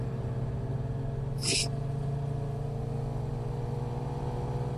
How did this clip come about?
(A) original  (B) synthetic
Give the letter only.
A